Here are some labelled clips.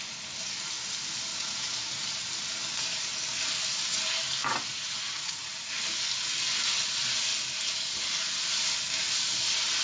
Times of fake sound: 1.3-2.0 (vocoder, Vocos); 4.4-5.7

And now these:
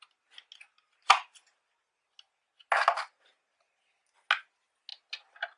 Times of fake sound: none

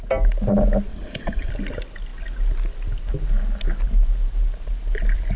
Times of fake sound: 0.9-1.5 (vocoder, Vocos)

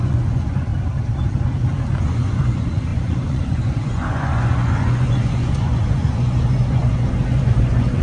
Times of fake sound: 0.0-0.7 (vocoder, Vocos); 2.0-8.0

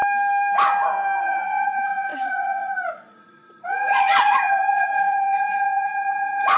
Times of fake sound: 1.2-6.6 (vocoder, Vocos)